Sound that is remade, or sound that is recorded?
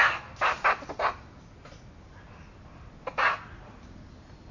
recorded